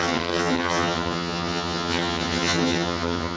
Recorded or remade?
remade